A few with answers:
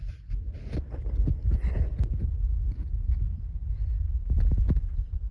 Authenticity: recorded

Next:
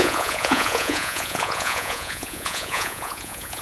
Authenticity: remade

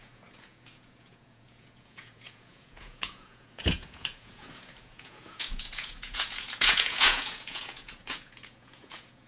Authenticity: remade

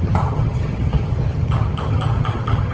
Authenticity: remade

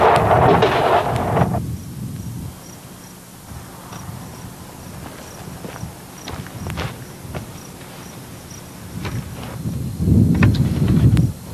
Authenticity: recorded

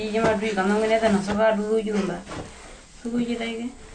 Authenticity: recorded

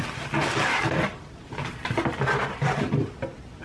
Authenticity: recorded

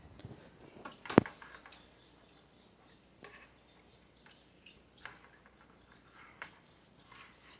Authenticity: recorded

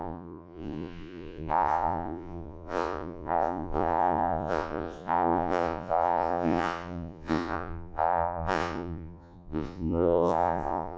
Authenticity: remade